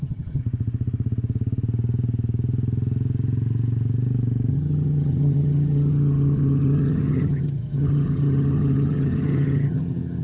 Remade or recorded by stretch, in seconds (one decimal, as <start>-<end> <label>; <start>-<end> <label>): 0.0-0.4 remade; 0.4-4.5 recorded; 4.5-10.2 remade